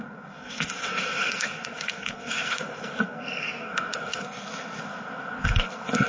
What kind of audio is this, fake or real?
fake